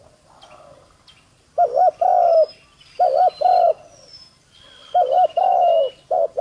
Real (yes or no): yes